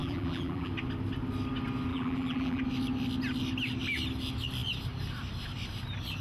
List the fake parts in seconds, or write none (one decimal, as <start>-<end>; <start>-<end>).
0.0-0.7; 1.9-2.6